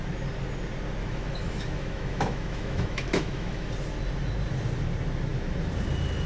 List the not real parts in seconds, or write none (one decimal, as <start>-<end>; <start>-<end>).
1.0-3.7